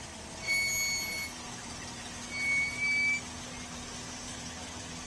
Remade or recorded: recorded